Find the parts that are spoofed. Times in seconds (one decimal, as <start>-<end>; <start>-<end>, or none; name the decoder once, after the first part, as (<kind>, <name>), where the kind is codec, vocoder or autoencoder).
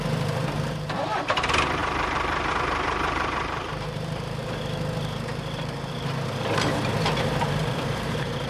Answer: 0.0-8.5 (vocoder, BigVGAN v2)